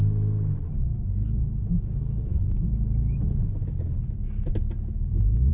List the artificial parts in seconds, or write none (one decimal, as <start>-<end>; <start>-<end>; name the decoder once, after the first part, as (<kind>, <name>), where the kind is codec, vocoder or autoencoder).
none